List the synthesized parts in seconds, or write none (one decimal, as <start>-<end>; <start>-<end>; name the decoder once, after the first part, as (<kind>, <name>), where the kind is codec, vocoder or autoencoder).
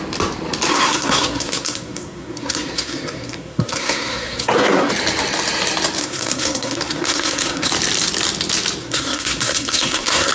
0.7-4.9 (codec, SNAC); 6.0-7.7; 8.8-10.3